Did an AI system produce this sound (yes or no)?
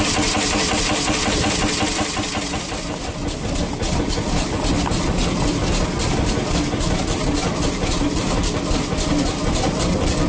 no